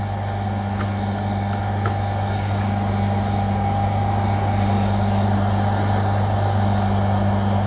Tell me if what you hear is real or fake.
real